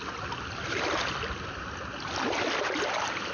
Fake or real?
real